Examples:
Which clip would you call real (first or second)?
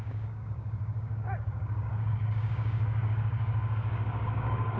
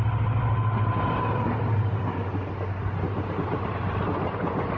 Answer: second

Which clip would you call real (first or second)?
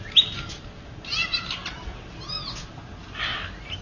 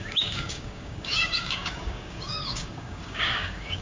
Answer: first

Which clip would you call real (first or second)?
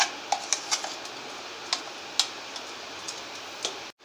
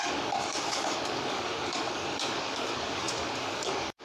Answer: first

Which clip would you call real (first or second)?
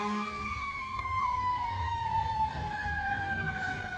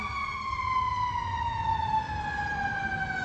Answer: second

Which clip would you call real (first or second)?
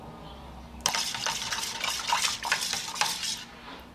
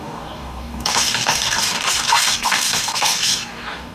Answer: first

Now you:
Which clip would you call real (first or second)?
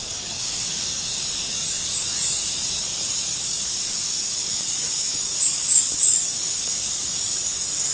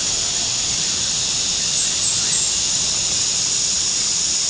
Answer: second